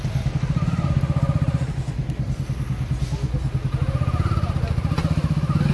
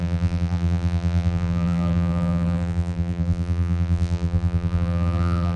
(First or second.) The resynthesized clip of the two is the second